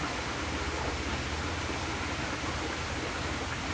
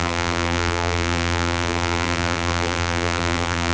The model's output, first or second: second